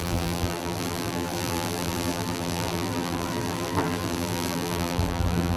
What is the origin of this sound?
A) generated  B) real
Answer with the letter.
A